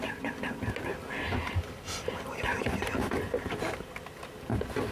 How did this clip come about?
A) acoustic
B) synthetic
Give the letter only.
A